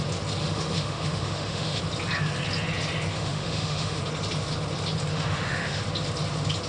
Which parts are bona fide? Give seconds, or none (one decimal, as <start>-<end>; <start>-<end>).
0.0-0.4; 1.8-3.1; 4.0-5.1; 5.8-6.7